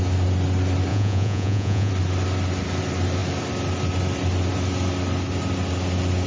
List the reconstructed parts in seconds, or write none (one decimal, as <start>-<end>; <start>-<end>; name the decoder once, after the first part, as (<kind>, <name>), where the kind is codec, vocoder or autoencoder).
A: 0.9-1.9 (vocoder, Vocos)